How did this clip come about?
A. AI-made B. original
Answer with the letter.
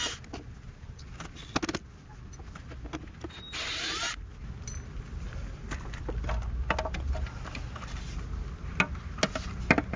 B